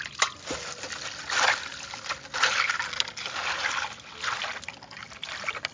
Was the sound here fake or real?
real